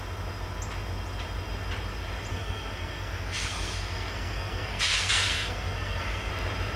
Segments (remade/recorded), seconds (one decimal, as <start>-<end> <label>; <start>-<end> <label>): 0.0-2.3 recorded; 2.3-6.3 remade; 6.3-6.8 recorded